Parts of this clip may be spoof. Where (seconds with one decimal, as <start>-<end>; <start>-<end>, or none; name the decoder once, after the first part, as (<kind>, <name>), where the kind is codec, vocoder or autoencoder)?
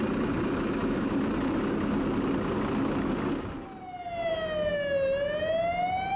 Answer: none